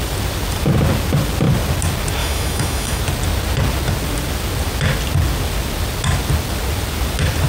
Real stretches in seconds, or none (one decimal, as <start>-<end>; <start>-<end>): 0.0-2.2; 3.0-7.5